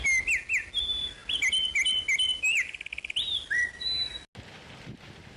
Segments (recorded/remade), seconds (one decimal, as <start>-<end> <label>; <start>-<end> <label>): 0.0-5.4 recorded